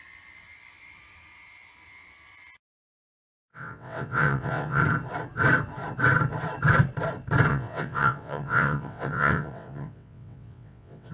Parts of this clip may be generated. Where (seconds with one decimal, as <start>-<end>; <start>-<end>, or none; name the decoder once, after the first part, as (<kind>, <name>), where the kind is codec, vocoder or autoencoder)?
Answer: 3.5-4.8 (vocoder, WaveNeXt); 7.5-11.1